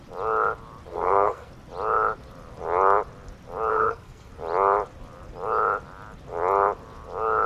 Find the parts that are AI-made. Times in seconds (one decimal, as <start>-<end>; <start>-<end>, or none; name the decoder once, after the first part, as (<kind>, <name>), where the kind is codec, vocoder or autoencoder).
0.9-1.5 (codec, SNAC); 3.7-4.3

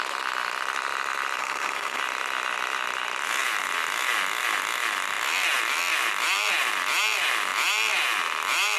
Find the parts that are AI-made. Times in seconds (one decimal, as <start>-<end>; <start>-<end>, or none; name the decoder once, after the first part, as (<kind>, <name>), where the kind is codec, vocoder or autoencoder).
1.4-2.0 (codec, SNAC)

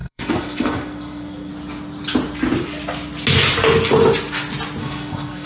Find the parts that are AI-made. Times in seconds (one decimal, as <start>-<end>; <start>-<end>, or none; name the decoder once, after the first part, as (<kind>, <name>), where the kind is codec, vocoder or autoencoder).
0.0-1.5 (codec, SNAC); 4.8-5.5

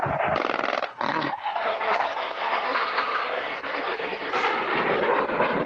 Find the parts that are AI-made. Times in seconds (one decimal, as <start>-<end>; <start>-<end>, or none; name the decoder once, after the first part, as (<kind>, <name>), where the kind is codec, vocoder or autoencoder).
0.9-4.3 (codec, SNAC)